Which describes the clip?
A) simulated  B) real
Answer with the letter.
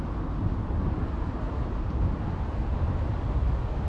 B